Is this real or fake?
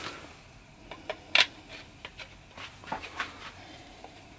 real